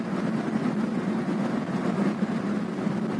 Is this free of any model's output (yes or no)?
yes